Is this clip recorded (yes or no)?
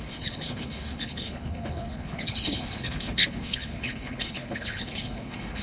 no